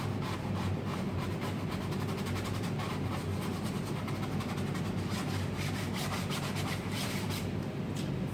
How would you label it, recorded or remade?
remade